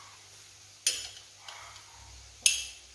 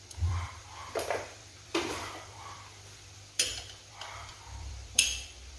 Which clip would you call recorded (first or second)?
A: first